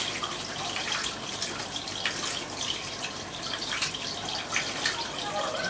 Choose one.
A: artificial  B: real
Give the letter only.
B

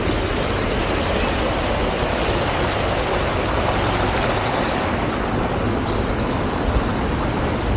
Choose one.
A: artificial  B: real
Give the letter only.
B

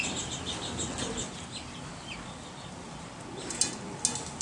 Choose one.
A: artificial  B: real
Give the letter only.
B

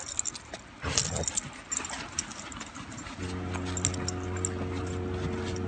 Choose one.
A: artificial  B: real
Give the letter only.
B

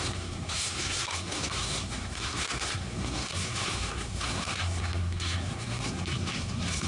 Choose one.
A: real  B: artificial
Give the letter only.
B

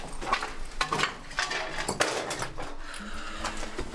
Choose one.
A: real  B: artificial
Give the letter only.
A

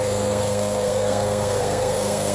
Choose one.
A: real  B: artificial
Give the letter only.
B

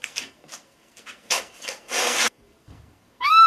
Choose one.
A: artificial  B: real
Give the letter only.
A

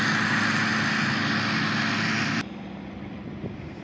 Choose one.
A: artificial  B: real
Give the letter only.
B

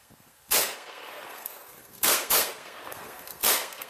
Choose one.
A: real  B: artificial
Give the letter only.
B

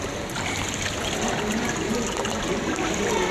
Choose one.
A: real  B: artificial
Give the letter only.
A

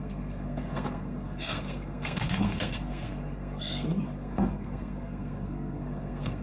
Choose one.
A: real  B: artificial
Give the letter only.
B